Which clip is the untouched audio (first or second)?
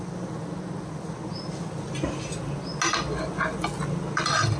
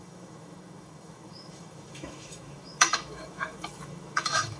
first